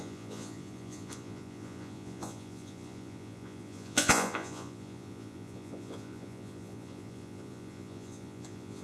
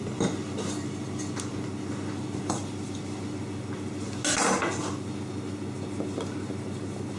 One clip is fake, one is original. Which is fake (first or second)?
first